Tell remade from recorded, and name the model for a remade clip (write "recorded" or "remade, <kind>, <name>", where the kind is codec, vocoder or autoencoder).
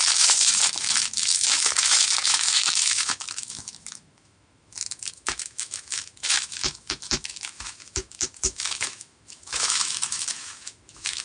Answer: remade, autoencoder, DAC-VAE